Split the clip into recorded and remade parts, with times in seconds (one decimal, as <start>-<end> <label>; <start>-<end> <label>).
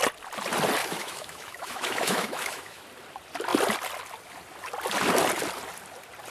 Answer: 0.0-0.8 recorded; 0.8-2.8 remade; 2.8-6.3 recorded